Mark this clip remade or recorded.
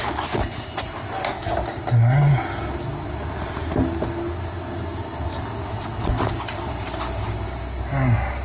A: recorded